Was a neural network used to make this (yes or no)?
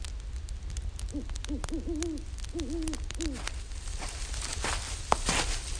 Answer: no